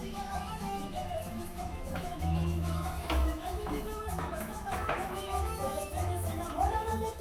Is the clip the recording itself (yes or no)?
no